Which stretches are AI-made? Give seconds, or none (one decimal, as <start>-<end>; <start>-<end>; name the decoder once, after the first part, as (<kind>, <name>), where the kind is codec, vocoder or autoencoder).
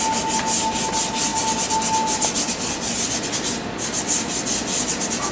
none